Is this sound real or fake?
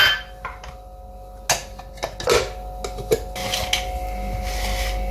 real